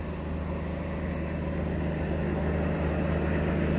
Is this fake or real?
real